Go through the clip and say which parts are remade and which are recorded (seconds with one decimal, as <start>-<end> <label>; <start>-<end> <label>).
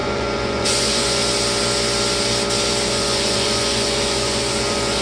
0.0-1.2 remade; 1.2-2.9 recorded; 2.9-5.0 remade